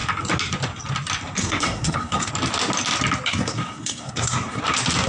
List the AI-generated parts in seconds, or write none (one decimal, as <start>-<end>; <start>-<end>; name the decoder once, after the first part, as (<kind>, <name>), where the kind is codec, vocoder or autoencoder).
1.4-2.3 (codec, SNAC); 3.3-4.6